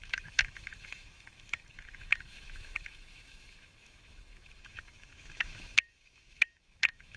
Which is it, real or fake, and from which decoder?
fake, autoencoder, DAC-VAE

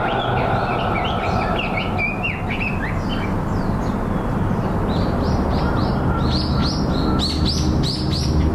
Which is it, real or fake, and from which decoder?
real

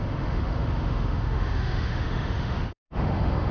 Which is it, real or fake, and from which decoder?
fake, autoencoder, DAC-VAE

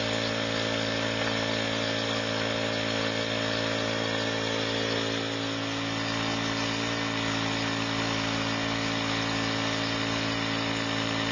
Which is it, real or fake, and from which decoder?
real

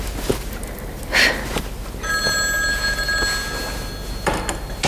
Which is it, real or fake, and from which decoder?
real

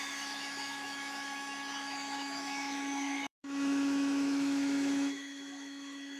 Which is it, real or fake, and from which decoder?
fake, autoencoder, DAC-VAE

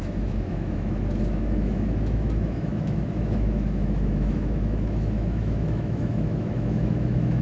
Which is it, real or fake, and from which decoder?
fake, autoencoder, DAC-VAE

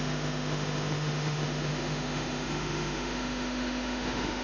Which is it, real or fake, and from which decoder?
fake, autoencoder, DAC-VAE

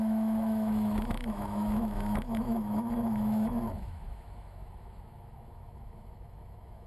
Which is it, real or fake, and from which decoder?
fake, autoencoder, DAC-VAE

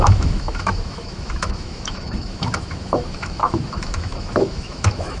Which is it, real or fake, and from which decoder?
fake, autoencoder, DAC-VAE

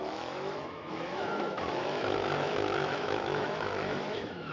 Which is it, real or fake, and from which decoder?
fake, autoencoder, DAC-VAE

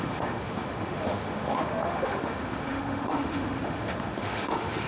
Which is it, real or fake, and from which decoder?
fake, autoencoder, DAC-VAE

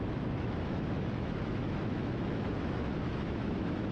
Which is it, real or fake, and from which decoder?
fake, autoencoder, DAC-VAE